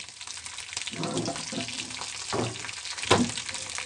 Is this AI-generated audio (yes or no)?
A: no